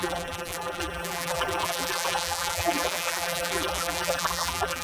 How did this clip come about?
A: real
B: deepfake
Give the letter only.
B